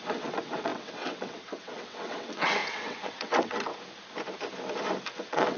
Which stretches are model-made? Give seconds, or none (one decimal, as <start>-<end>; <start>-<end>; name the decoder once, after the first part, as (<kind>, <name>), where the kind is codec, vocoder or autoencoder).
0.0-3.7 (vocoder, WaveNeXt); 5.1-5.6

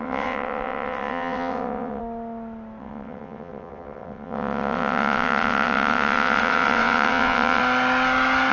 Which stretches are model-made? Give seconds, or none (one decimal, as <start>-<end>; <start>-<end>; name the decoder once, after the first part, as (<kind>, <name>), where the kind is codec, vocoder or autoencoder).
0.0-2.0 (vocoder, WaveNeXt); 2.8-7.6

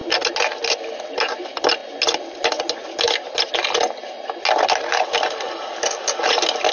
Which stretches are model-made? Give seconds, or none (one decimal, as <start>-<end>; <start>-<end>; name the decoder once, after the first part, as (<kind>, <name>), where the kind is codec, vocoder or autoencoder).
none

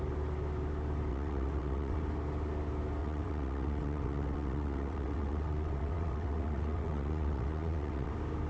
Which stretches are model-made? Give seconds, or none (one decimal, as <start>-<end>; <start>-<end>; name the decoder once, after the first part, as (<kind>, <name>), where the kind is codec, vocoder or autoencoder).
1.1-2.0 (vocoder, WaveNeXt); 3.0-8.1

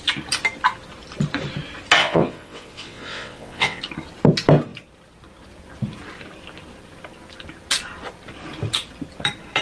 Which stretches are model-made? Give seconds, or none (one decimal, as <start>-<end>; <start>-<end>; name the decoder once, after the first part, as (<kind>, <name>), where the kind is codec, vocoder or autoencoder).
2.0-3.8 (vocoder, WaveNeXt)

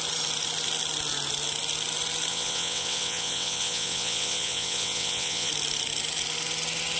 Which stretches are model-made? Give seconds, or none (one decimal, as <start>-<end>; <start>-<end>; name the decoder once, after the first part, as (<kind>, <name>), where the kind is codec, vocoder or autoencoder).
2.3-5.5 (vocoder, WaveNeXt)

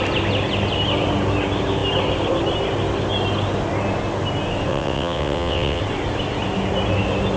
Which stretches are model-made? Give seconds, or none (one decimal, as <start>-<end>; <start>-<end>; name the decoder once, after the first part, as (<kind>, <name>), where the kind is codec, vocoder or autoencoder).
4.7-5.8 (vocoder, WaveNeXt)